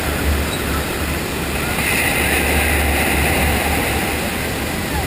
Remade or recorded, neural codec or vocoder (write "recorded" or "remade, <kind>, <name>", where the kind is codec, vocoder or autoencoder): recorded